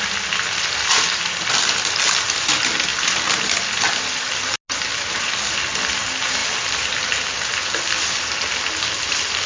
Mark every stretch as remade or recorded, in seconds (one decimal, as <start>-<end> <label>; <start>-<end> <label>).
0.0-9.5 recorded